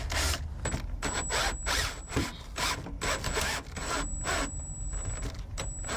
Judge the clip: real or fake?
real